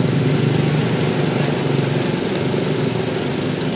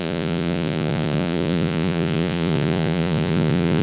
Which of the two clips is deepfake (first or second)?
second